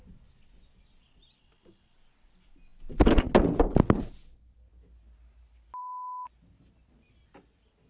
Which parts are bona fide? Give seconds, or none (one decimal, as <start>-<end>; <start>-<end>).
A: 0.0-5.8; 6.3-7.9